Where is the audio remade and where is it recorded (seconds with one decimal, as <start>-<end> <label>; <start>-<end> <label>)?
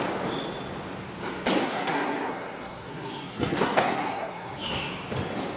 0.0-1.6 recorded; 1.6-4.9 remade; 4.9-5.6 recorded